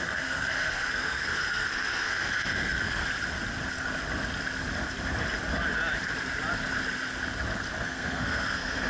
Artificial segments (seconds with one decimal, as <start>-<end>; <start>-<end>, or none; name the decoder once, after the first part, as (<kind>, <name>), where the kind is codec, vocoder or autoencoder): 0.0-3.0 (codec, SNAC); 7.8-8.9

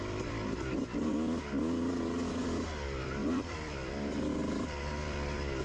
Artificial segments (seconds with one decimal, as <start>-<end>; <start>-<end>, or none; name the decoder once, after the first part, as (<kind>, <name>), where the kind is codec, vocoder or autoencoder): 0.0-1.1 (vocoder, BigVGAN v2); 2.3-5.6

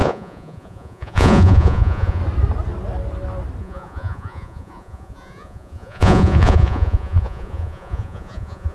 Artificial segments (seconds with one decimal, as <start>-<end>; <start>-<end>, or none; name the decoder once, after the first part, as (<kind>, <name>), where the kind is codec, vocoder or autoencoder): 0.0-2.2 (vocoder, Vocos); 3.6-8.7

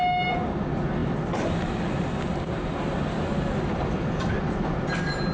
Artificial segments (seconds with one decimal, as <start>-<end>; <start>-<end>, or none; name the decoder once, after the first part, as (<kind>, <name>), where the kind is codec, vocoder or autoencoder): none

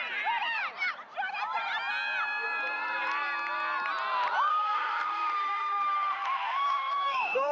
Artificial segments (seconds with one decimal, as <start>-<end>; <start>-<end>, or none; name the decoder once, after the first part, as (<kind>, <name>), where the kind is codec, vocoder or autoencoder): 4.5-7.5 (autoencoder, DAC-VAE)

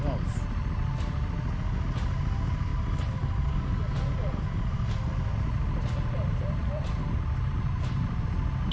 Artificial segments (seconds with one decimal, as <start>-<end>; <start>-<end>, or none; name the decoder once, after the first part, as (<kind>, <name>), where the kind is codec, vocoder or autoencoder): none

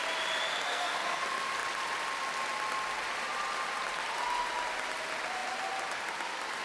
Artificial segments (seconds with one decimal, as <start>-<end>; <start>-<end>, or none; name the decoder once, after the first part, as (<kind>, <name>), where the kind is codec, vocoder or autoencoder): 0.5-1.2 (codec, SNAC)